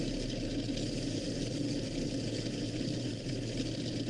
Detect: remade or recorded recorded